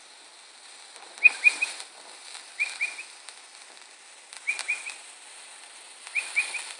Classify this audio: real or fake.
real